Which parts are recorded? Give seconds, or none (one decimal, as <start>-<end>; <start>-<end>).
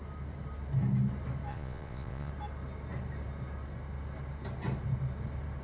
0.0-1.5; 2.3-5.6